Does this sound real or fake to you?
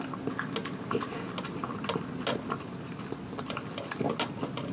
real